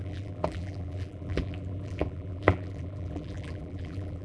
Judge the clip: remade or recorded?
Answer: remade